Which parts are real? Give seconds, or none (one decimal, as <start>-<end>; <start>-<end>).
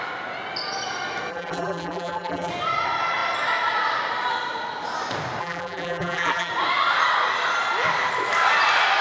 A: 0.0-1.3; 2.5-5.4; 6.5-9.0